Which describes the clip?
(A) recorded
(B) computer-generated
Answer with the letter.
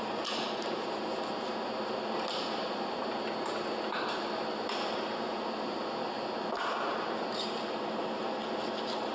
A